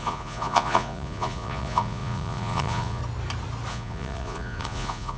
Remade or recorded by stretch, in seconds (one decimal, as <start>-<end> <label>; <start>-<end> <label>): 0.0-3.0 remade; 3.0-3.7 recorded; 3.7-5.2 remade